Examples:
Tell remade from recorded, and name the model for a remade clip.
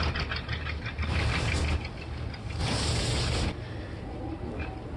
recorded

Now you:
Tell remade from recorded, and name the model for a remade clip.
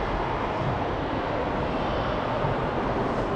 recorded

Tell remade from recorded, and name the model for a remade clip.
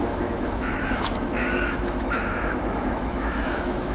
remade, autoencoder, DAC-VAE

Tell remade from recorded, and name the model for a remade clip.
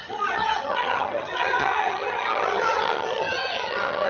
remade, vocoder, HiFi-GAN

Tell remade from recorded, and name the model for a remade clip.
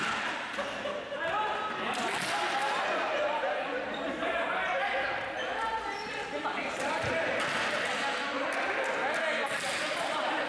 recorded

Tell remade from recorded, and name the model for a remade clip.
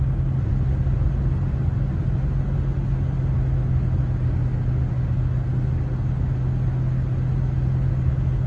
recorded